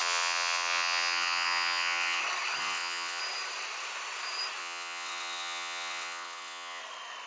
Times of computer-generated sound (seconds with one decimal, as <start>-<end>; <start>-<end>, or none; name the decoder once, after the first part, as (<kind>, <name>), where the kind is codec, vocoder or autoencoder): 0.0-2.2 (vocoder, WaveNeXt); 2.6-3.2; 4.6-6.8